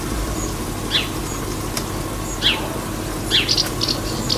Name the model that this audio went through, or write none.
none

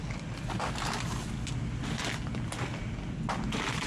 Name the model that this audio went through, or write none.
none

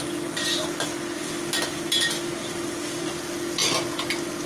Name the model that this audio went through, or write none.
none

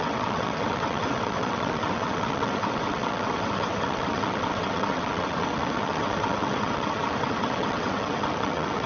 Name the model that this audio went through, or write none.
vocoder, WaveNeXt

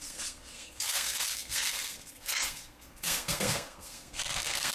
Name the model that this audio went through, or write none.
codec, SNAC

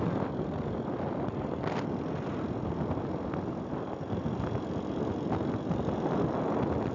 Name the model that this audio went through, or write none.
none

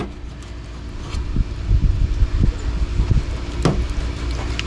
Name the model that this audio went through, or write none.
none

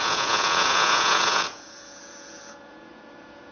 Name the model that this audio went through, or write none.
vocoder, Vocos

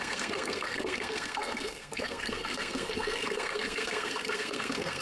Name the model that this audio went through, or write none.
codec, SNAC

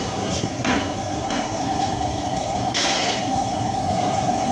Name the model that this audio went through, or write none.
codec, SNAC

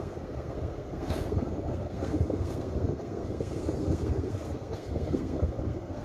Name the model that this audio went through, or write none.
codec, SNAC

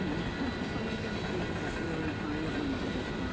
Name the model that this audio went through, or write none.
none